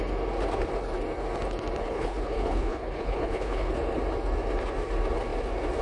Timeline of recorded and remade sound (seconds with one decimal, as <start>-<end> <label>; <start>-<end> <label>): 0.0-1.8 recorded; 1.8-3.7 remade; 3.7-5.8 recorded